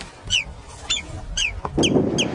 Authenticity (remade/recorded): recorded